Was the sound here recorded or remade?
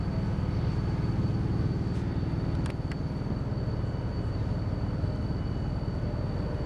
recorded